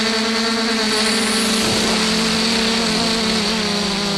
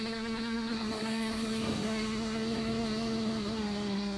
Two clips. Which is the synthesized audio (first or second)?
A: second